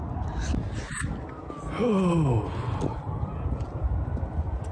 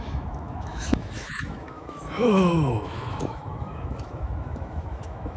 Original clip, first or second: first